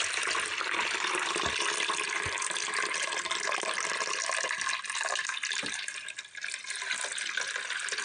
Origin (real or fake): real